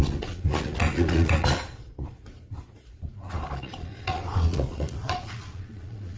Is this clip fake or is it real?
fake